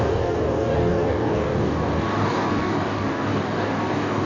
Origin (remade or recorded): remade